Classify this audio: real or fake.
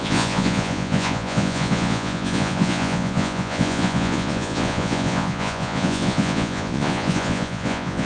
fake